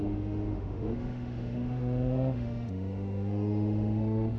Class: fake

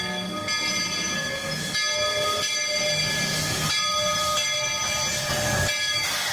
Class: real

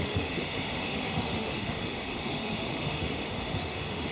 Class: fake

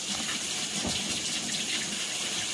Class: real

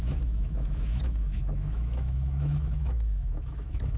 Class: fake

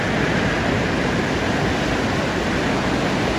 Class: real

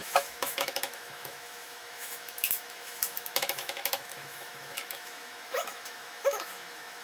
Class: fake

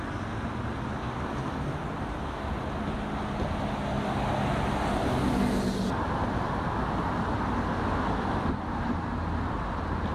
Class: real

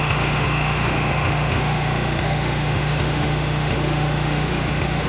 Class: fake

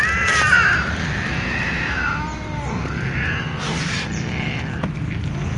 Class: real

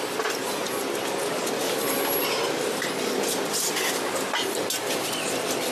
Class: real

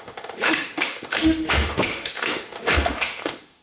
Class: fake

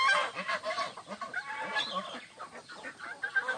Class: real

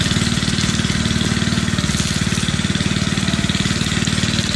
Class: real